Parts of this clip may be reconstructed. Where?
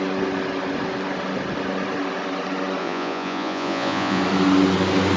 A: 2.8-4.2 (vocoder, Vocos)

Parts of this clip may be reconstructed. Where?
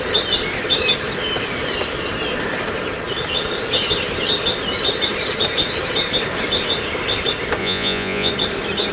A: 7.6-8.3 (vocoder, Vocos)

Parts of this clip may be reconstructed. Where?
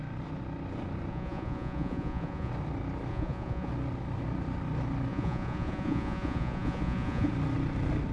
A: 1.1-2.5 (vocoder, Vocos); 3.1-3.7; 5.1-7.3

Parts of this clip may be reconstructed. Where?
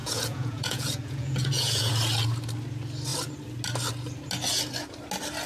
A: 0.0-1.9 (vocoder, Vocos)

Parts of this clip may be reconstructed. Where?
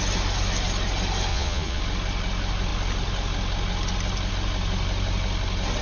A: 1.3-1.8 (vocoder, Vocos)